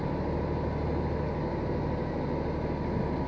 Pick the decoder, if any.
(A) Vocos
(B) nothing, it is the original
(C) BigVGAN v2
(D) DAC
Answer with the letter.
B